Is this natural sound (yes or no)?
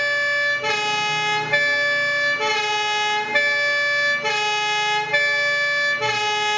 yes